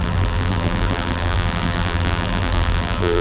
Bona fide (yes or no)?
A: no